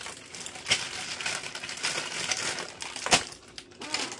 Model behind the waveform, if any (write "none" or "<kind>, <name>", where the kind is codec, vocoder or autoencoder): none